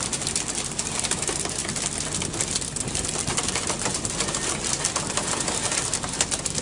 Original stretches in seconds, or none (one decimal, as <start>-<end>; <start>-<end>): none